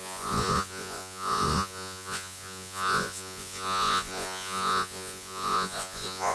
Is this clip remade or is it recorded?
remade